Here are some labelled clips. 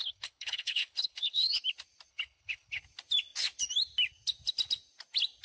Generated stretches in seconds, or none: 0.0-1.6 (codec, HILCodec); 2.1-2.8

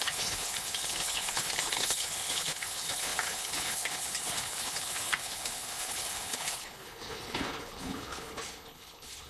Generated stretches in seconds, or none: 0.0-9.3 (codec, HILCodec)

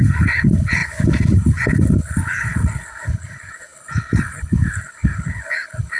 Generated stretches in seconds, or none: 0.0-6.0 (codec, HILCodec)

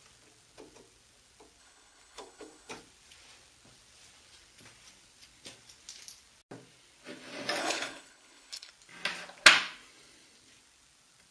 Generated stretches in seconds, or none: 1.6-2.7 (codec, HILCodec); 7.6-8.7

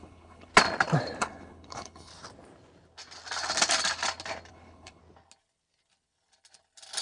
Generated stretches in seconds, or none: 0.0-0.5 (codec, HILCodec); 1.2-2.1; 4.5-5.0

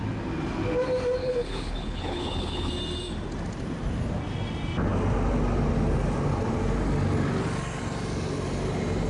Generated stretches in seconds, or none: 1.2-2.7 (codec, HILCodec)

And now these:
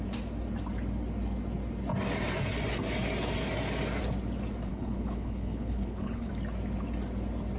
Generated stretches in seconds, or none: 4.7-6.3 (codec, HILCodec)